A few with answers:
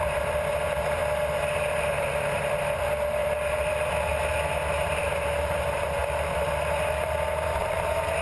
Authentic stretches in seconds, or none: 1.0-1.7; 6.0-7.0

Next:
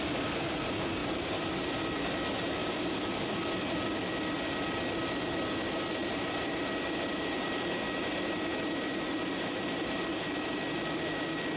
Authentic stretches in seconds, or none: 0.0-1.0; 1.5-2.6; 3.3-6.0; 10.6-11.6